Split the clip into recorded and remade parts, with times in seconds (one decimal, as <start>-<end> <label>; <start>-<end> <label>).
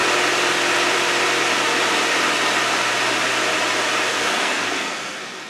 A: 0.0-4.1 recorded; 4.1-5.5 remade